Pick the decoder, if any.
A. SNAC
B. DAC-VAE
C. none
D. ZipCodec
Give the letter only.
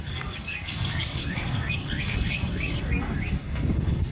A